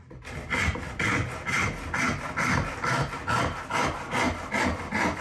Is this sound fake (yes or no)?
no